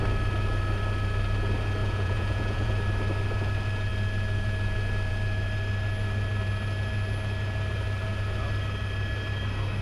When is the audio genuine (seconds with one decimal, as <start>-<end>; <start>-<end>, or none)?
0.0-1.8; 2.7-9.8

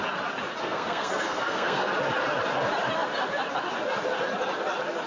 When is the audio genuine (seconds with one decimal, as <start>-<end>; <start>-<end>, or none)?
0.0-0.6; 1.9-5.1

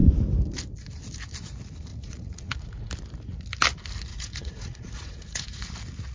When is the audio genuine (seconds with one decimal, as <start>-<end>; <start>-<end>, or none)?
0.0-1.9; 2.9-4.1; 5.6-6.1

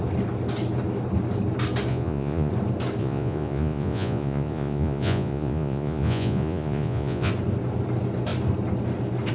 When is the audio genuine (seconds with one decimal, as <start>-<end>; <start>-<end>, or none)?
0.0-1.9; 2.5-3.0; 7.3-9.3

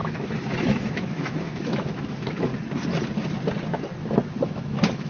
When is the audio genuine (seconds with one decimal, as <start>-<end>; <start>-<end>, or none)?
2.5-4.4